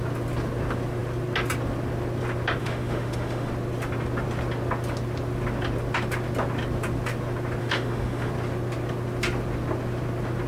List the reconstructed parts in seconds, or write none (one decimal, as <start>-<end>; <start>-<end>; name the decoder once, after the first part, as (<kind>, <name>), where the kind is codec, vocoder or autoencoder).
2.6-3.5 (autoencoder, DAC-VAE); 7.6-8.3